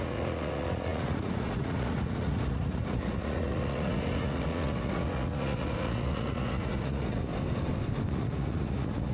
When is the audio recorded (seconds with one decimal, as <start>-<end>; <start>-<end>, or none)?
7.3-8.1